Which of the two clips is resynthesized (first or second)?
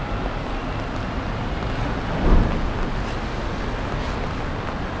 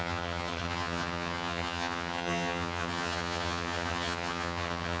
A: second